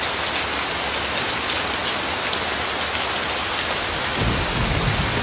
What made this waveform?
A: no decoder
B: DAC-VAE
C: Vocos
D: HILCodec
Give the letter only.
A